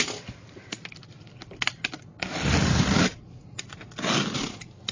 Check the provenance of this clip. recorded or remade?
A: recorded